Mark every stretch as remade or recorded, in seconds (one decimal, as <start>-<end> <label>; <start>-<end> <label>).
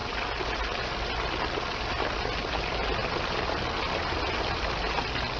0.0-5.4 recorded